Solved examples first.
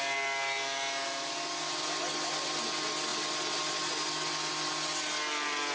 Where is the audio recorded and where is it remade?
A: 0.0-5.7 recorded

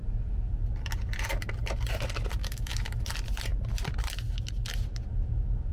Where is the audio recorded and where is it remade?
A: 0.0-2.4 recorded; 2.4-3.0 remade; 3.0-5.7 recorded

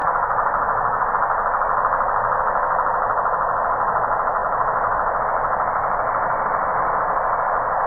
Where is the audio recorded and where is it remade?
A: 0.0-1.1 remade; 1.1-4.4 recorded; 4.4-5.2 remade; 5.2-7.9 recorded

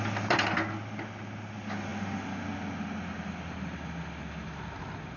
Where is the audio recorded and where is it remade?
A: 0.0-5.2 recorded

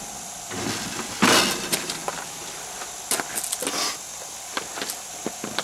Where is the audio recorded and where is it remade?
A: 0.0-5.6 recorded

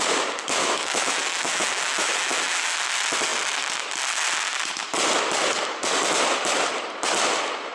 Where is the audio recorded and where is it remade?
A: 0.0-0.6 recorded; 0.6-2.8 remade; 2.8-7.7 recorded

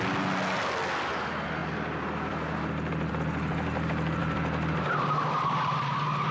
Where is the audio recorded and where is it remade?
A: 0.0-6.3 recorded

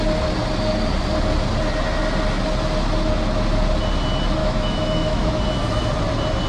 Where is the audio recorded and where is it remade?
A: 0.0-4.4 recorded; 4.4-5.4 remade; 5.4-6.5 recorded